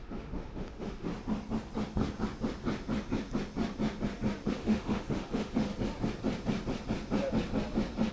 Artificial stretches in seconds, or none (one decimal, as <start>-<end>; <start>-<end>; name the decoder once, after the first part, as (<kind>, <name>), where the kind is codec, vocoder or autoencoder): 0.0-1.1 (autoencoder, DAC-VAE); 4.5-5.7